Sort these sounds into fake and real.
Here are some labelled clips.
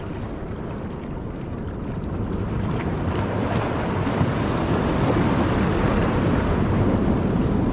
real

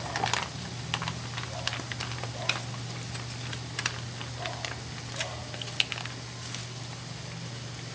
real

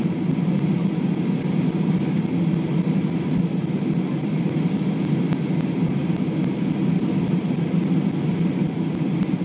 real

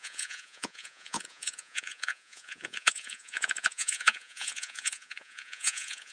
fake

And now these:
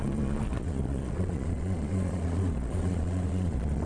fake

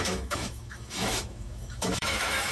fake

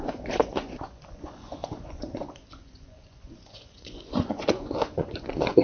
fake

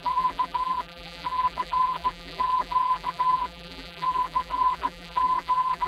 fake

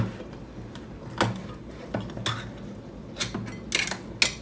real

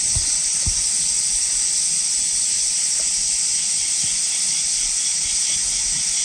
real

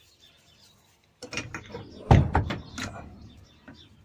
real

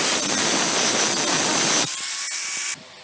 real